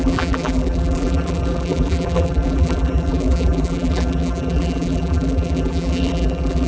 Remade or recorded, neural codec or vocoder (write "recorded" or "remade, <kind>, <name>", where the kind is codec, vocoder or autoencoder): remade, vocoder, BigVGAN v2